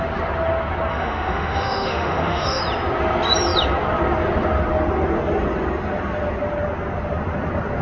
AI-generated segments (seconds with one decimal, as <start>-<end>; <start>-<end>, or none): 0.9-2.6